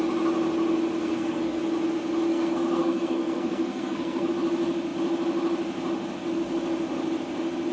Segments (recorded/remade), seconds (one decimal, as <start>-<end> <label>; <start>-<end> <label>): 0.0-1.0 recorded; 1.0-1.6 remade; 1.6-2.3 recorded; 2.3-4.3 remade; 4.3-7.7 recorded